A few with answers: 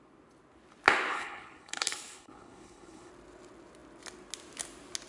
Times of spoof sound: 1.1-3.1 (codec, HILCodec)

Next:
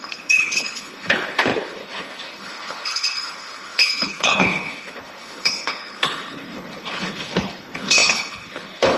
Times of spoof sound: 0.0-9.0 (codec, HILCodec)